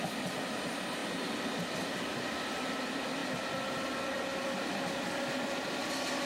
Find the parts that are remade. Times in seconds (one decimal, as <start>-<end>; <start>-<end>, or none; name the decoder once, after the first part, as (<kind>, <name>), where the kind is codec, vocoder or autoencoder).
none